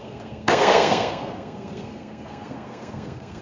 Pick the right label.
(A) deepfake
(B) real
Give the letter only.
A